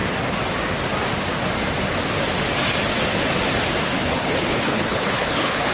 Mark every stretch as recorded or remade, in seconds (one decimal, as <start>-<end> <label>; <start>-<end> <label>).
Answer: 0.0-4.0 recorded; 4.0-5.7 remade

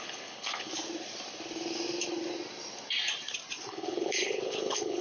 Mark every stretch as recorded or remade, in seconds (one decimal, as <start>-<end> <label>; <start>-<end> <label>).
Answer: 0.0-0.7 remade; 0.7-3.7 recorded; 3.7-5.0 remade

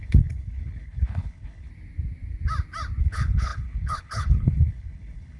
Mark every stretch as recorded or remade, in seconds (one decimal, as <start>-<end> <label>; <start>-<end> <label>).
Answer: 0.0-1.7 remade; 1.7-3.0 recorded; 3.0-5.4 remade

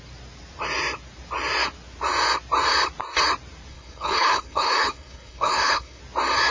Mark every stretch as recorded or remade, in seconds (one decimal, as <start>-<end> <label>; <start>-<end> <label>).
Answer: 0.0-3.7 recorded; 3.7-6.0 remade; 6.0-6.5 recorded

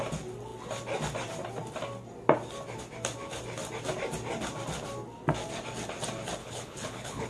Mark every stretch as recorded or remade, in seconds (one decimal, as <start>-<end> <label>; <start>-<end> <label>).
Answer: 0.0-6.4 recorded; 6.4-7.3 remade

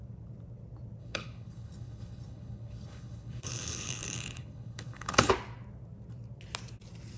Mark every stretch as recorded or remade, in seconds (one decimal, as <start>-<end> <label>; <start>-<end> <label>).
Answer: 0.0-1.0 recorded; 1.0-5.3 remade; 5.3-7.2 recorded

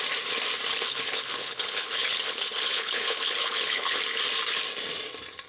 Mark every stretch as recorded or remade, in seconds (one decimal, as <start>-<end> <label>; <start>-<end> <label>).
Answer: 0.0-0.7 recorded; 0.7-4.0 remade; 4.0-5.5 recorded

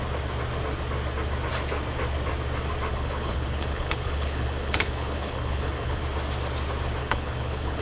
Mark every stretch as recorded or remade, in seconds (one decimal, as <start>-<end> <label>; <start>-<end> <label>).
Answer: 0.0-2.9 recorded; 2.9-6.0 remade; 6.0-7.0 recorded; 7.0-7.8 remade